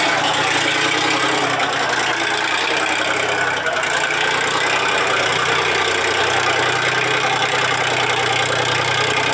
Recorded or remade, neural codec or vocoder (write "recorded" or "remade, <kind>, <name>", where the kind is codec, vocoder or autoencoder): recorded